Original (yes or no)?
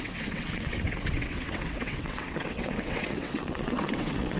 no